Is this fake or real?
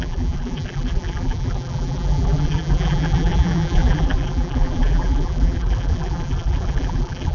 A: fake